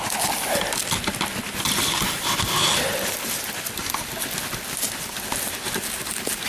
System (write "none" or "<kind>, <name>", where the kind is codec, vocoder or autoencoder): none